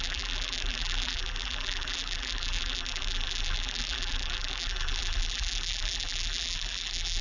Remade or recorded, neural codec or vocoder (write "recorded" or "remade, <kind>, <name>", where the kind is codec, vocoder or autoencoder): remade, vocoder, BigVGAN v2